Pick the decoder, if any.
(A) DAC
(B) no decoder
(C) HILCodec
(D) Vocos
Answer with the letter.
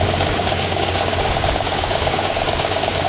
A